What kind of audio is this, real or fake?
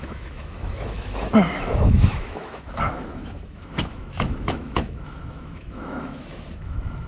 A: fake